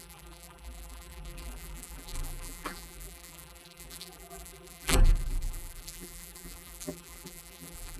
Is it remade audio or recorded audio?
remade